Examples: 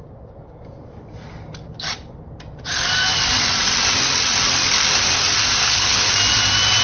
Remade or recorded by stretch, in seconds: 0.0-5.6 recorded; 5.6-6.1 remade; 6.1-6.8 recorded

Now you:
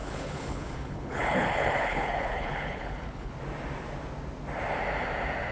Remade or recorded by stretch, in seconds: 0.0-3.3 remade; 3.3-5.5 recorded

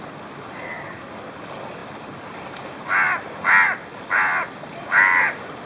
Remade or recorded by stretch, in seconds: 0.0-5.7 recorded

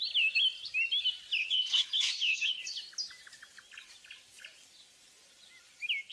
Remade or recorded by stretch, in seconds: 0.0-1.4 recorded; 1.4-2.6 remade; 2.6-6.1 recorded

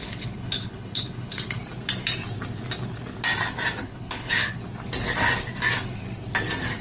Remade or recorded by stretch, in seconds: 0.0-1.6 remade; 1.6-3.8 recorded; 3.8-4.6 remade; 4.6-6.8 recorded

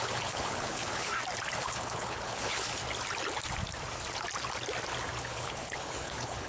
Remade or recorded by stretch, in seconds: 0.0-1.1 remade; 1.1-1.6 recorded; 1.6-2.8 remade; 2.8-5.2 recorded; 5.2-6.5 remade